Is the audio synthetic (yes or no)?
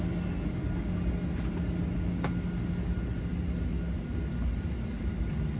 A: no